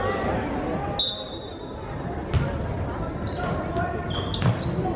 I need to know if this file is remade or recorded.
recorded